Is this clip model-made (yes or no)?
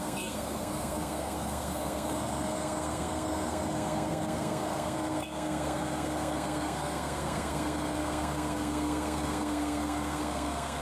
yes